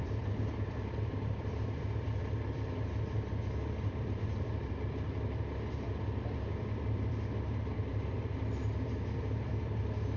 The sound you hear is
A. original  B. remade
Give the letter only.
B